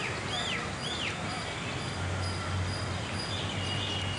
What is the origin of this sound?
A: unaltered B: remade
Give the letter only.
A